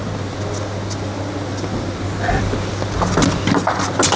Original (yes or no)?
yes